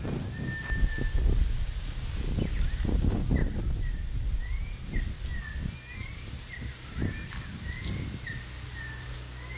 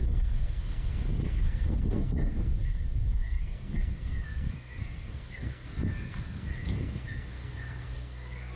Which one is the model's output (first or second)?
second